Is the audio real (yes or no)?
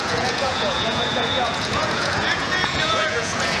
no